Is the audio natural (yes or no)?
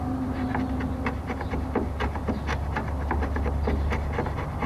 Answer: yes